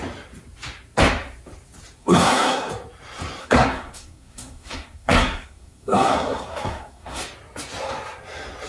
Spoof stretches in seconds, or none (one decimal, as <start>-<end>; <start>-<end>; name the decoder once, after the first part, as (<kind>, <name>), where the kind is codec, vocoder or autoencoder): 2.0-2.7 (codec, SNAC); 3.4-7.2